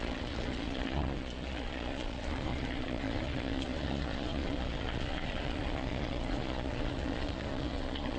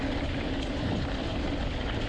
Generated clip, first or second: first